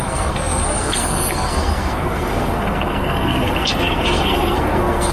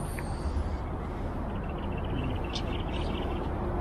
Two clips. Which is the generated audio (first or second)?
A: first